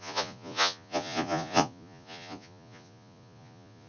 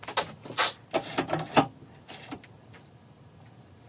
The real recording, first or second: second